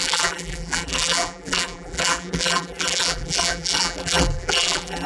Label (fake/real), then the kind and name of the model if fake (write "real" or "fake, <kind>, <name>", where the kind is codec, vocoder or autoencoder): fake, vocoder, BigVGAN v2